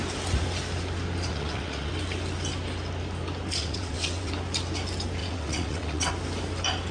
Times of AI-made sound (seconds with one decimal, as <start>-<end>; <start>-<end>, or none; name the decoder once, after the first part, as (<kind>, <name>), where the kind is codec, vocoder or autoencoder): 1.3-1.9 (vocoder, WaveNeXt); 3.6-4.3; 5.2-6.1